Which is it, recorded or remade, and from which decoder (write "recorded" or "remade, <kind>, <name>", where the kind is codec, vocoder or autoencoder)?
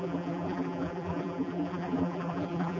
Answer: remade, vocoder, BigVGAN v2